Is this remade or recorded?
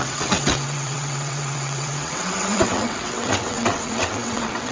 remade